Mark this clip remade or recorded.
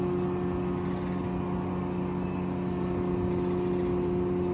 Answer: recorded